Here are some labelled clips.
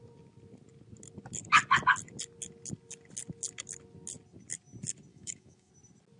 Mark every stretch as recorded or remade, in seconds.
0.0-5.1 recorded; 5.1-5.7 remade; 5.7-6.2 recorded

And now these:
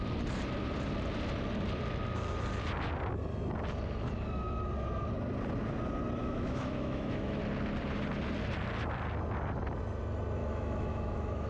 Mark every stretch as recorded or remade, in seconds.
0.0-6.2 recorded; 6.2-7.4 remade; 7.4-10.4 recorded; 10.4-11.5 remade